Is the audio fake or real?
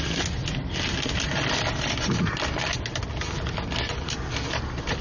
real